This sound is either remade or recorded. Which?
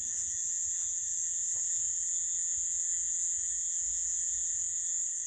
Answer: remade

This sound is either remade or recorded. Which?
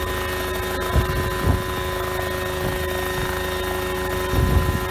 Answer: recorded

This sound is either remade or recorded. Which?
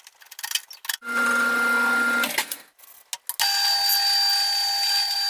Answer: recorded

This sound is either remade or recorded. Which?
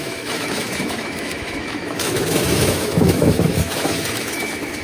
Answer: remade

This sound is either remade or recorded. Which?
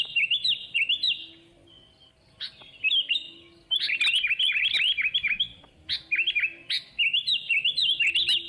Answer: recorded